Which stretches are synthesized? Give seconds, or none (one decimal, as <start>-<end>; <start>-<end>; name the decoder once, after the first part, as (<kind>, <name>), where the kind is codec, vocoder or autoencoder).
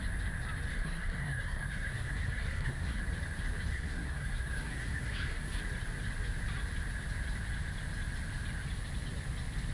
0.7-3.0 (codec, SNAC); 3.7-5.6